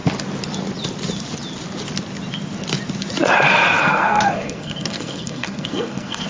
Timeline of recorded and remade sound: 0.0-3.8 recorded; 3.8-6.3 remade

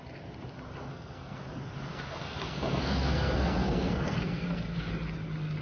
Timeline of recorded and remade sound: 0.0-0.9 recorded; 0.9-1.4 remade; 1.4-1.9 recorded; 1.9-4.9 remade; 4.9-5.6 recorded

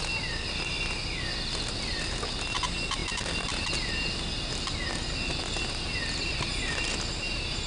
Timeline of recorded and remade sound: 0.0-7.7 recorded

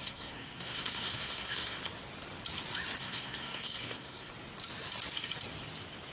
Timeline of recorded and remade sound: 0.0-1.8 remade; 1.8-3.0 recorded; 3.0-4.3 remade; 4.3-6.1 recorded